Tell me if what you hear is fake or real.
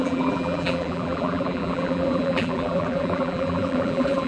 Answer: fake